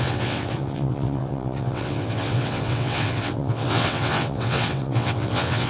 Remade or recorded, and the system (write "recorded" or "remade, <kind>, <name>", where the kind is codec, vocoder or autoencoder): remade, vocoder, WaveNeXt